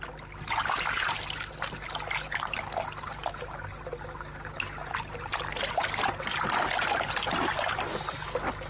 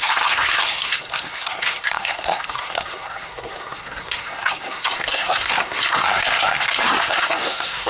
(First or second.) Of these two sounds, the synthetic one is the second